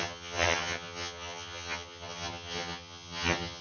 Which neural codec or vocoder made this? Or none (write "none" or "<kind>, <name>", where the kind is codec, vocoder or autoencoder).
vocoder, HiFi-GAN